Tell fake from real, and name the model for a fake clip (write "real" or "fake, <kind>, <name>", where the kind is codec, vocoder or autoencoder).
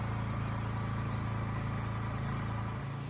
real